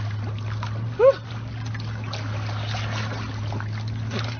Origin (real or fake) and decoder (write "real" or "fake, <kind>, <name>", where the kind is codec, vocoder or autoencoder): real